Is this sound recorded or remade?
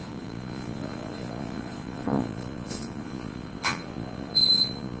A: remade